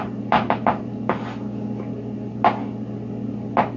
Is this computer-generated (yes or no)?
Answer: no